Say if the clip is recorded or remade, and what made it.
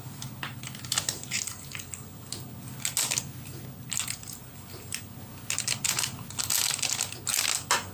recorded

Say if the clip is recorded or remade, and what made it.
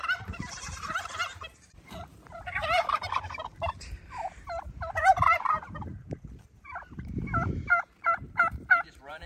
remade, vocoder, BigVGAN v2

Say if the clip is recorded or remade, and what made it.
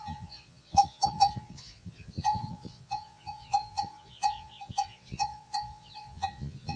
remade, vocoder, Vocos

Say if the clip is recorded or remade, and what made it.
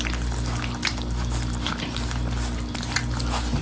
recorded